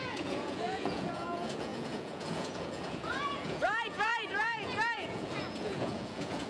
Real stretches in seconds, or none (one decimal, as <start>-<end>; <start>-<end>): none

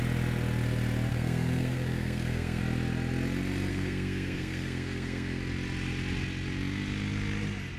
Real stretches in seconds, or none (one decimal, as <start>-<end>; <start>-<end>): 0.0-1.1; 2.6-3.7; 5.4-7.8

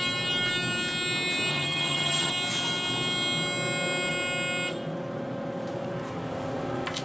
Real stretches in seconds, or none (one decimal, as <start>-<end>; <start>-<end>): 0.0-1.5; 2.3-7.0

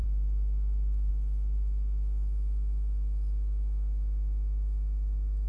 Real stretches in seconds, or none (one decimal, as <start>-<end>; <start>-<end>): 0.0-5.5

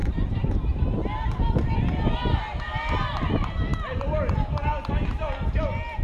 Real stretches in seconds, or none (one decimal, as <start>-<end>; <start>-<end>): 1.4-6.0

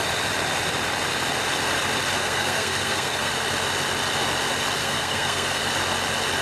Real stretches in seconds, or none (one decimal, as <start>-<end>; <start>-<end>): 0.0-2.2; 3.3-4.8; 5.6-6.4

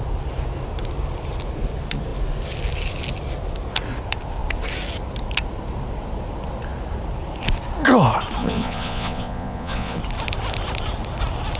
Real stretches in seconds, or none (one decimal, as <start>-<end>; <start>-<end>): 0.0-8.4; 10.0-11.6

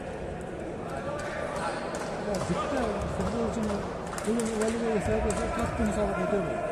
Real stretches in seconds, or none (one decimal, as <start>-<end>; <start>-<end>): 2.7-6.7